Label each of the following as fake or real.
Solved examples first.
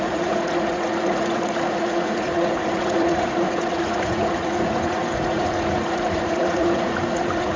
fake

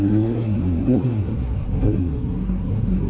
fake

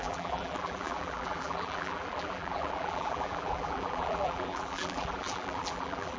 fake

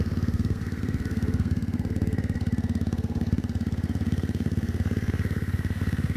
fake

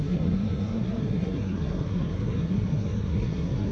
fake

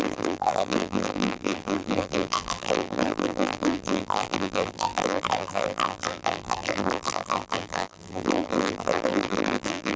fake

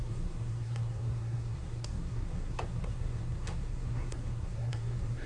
fake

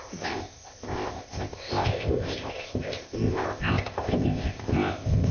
fake